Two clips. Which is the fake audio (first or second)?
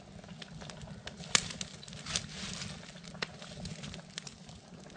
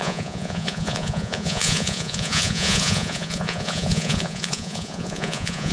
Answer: second